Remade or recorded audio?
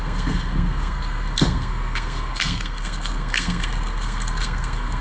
remade